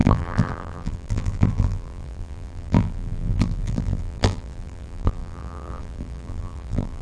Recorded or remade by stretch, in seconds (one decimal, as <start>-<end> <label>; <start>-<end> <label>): 0.0-7.0 remade